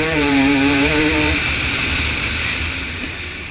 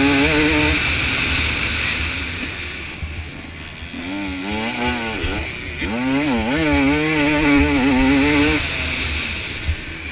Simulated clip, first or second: first